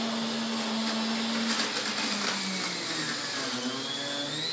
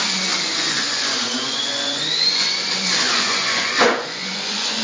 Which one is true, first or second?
first